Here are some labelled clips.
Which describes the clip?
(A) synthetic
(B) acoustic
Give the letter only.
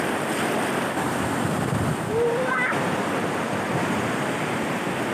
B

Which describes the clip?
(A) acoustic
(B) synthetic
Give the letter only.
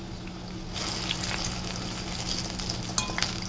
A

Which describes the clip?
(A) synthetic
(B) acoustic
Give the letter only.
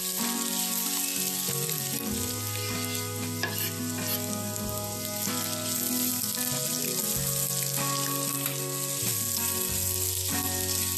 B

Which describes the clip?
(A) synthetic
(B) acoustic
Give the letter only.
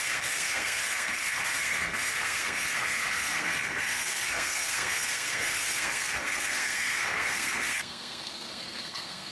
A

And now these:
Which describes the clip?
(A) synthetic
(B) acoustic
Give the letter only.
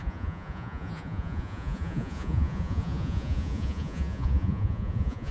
A